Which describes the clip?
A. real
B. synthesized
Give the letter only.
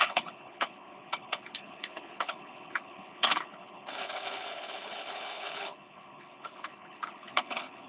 B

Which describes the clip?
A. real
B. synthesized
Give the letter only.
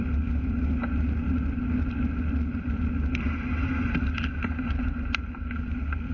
A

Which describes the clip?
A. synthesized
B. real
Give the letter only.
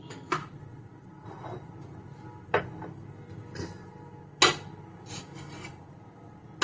B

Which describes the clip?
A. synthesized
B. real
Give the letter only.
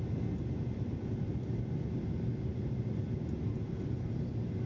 B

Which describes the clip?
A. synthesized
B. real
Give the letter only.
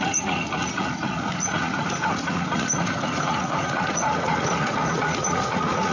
A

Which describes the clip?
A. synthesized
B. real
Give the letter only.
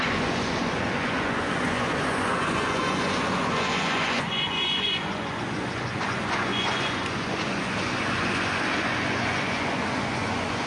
A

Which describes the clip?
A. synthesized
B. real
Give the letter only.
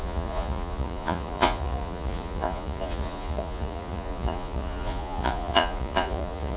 A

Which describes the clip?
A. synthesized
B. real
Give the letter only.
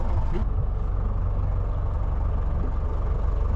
B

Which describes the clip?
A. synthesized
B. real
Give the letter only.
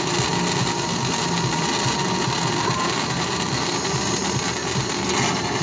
B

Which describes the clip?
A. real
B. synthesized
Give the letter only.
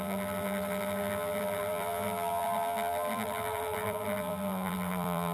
B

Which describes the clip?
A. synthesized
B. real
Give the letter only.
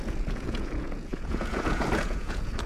A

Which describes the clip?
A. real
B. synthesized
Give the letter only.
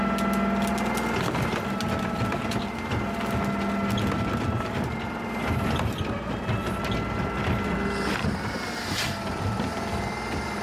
A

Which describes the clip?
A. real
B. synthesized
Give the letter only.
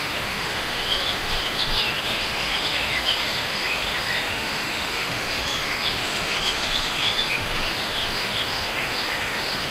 B